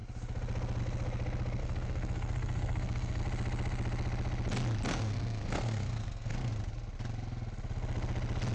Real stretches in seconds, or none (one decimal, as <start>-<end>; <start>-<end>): 0.0-1.6; 3.2-4.9; 6.5-8.5